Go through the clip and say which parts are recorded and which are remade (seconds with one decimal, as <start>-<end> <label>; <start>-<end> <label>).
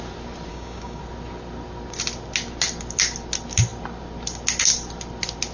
0.0-0.5 recorded; 0.5-1.0 remade; 1.0-5.5 recorded